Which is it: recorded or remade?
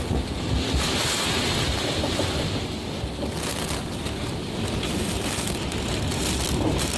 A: recorded